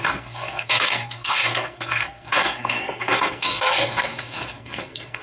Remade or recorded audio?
remade